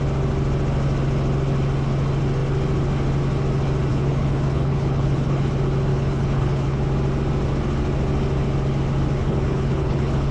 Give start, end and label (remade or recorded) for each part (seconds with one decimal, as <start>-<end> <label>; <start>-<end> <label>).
0.0-3.9 recorded; 3.9-5.5 remade; 5.5-5.9 recorded; 5.9-6.8 remade; 6.8-9.2 recorded; 9.2-10.3 remade